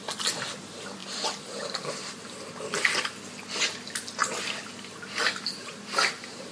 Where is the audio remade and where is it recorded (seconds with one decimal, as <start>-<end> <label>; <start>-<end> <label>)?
0.0-6.5 recorded